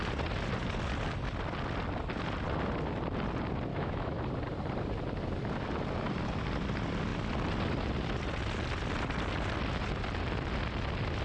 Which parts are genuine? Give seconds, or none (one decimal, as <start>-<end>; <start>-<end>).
0.0-3.7; 4.2-11.2